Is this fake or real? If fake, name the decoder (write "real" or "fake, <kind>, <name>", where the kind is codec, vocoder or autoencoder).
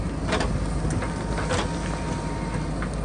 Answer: real